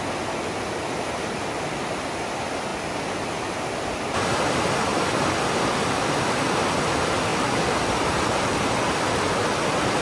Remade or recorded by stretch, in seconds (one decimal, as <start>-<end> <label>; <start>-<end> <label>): 0.0-10.0 recorded